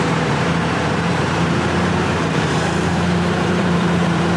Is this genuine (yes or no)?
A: no